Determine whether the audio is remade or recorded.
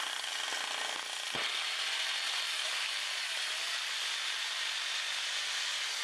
recorded